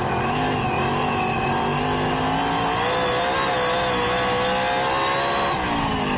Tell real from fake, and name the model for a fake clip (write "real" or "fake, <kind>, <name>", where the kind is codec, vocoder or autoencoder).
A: real